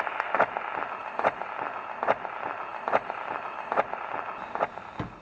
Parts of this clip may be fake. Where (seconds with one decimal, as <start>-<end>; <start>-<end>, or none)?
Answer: 1.0-1.5; 2.7-3.8